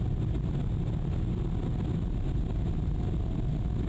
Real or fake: real